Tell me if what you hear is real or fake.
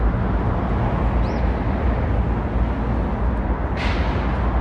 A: real